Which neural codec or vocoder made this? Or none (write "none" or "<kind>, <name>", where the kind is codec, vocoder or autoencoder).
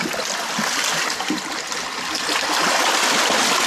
none